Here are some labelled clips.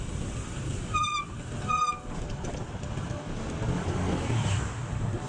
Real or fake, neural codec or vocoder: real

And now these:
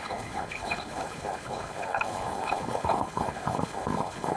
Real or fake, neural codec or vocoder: fake, codec, HILCodec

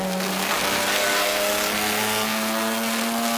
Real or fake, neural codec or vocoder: fake, codec, SNAC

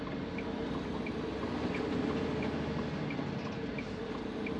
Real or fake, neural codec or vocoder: real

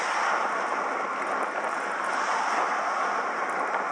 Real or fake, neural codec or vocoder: real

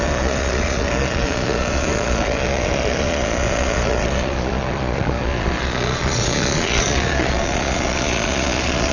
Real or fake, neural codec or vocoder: fake, vocoder, Vocos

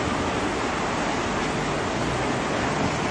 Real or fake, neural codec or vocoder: real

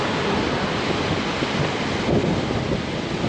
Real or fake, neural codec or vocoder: real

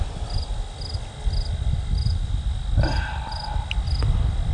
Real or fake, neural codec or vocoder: real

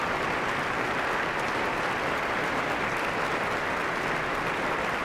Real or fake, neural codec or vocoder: real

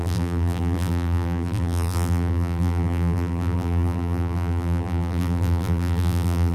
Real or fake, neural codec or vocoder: fake, vocoder, BigVGAN v2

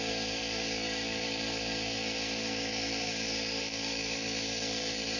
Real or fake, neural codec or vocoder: fake, codec, SNAC